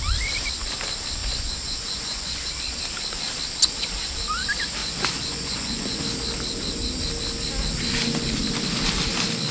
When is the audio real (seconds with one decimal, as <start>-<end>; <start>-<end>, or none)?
0.0-1.2; 2.5-4.8; 6.0-9.5